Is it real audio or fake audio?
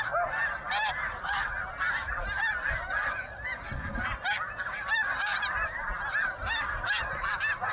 real